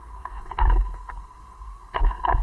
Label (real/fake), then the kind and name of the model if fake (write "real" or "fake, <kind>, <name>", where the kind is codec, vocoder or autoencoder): fake, codec, SNAC